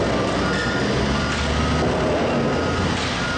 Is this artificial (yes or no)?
no